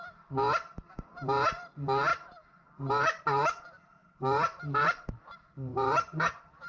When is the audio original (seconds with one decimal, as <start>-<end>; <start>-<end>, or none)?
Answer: 2.1-3.0